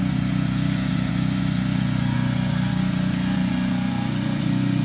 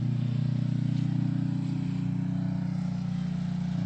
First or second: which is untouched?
second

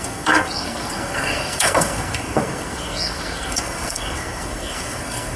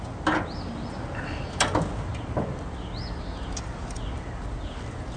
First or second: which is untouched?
second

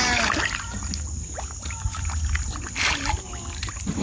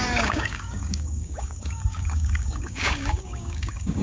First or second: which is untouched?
first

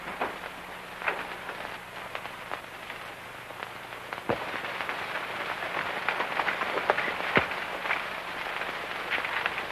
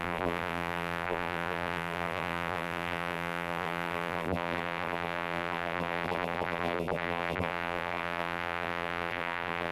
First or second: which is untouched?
first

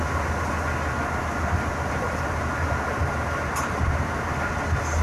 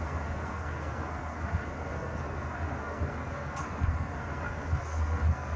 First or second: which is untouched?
first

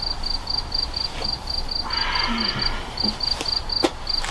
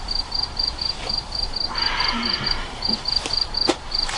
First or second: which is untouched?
first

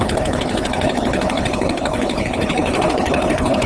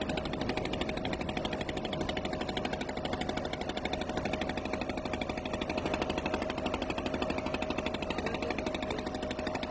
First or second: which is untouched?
second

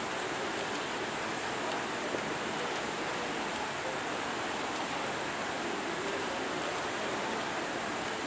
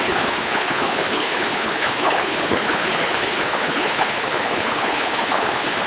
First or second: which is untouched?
first